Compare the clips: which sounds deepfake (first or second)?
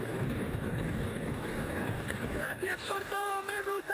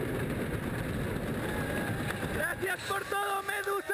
first